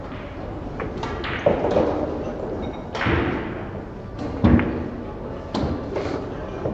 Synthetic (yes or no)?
no